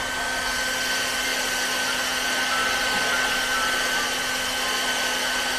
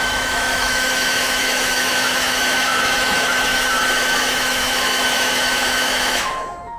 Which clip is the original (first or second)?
first